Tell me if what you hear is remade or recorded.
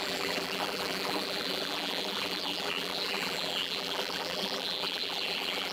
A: remade